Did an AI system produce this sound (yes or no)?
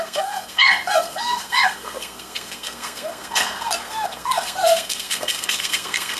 yes